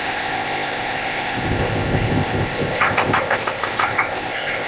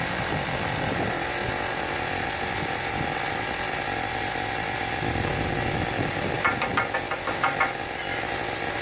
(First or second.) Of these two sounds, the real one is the second